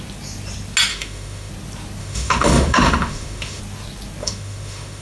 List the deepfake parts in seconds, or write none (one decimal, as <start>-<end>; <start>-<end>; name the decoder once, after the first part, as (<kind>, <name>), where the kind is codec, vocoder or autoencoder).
0.9-1.5 (autoencoder, DAC-VAE); 2.0-3.6; 4.2-5.0